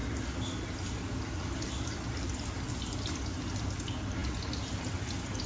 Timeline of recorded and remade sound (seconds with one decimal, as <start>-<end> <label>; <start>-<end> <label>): 0.0-5.5 recorded